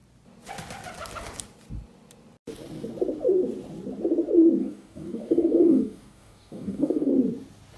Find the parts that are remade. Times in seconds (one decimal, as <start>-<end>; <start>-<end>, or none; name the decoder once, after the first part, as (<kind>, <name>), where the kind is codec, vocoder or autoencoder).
4.6-7.1 (codec, DAC)